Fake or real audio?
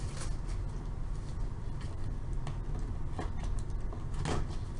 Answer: real